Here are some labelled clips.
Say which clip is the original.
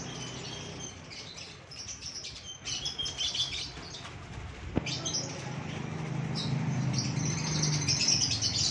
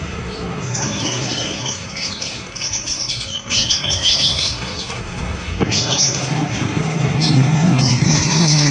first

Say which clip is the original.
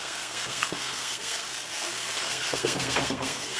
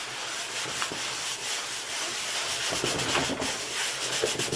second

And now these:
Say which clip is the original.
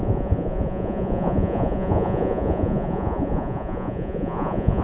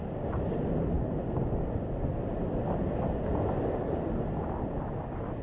second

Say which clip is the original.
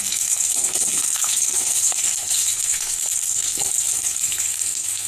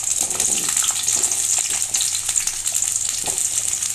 second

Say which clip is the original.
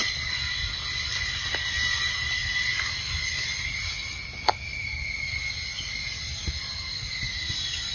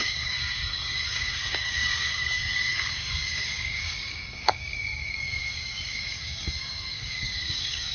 first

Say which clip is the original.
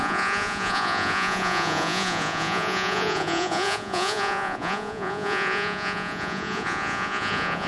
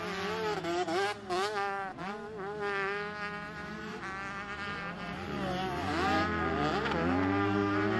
second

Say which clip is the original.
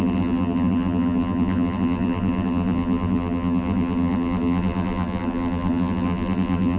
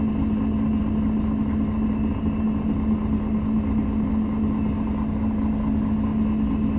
second